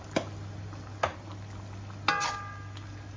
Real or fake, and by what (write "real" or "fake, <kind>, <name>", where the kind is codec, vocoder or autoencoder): real